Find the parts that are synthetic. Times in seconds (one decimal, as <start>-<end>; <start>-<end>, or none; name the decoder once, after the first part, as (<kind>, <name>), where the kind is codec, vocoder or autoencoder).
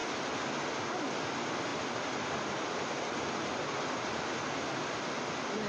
none